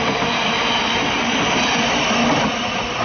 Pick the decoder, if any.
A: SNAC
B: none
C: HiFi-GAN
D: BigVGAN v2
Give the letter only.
B